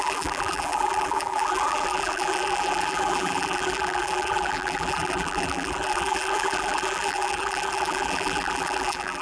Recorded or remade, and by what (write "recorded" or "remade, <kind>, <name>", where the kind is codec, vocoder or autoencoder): remade, vocoder, BigVGAN v2